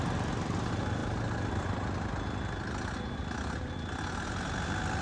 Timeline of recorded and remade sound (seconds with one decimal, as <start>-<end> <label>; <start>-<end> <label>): 0.0-5.0 recorded